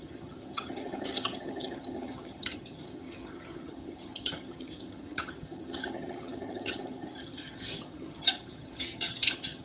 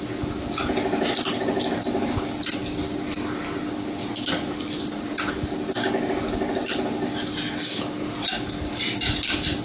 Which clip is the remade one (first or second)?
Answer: first